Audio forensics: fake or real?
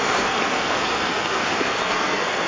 fake